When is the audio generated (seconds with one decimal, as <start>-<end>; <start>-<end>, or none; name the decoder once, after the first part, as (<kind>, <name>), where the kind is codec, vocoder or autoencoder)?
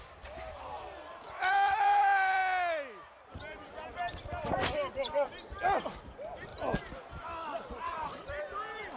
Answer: 0.0-2.4 (vocoder, BigVGAN v2); 6.0-6.5; 7.7-9.0